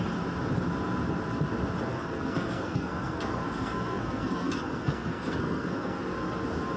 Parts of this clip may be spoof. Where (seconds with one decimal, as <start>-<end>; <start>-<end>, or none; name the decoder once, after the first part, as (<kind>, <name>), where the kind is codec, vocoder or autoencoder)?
1.9-6.0 (codec, SNAC)